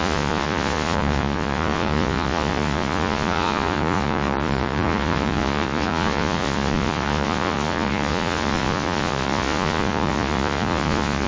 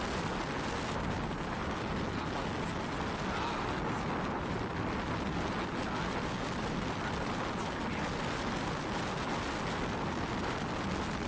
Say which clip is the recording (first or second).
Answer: second